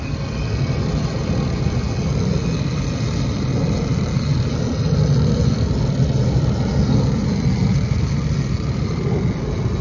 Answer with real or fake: real